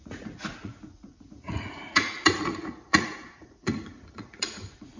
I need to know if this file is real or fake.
fake